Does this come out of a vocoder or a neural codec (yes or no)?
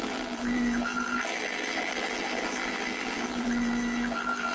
yes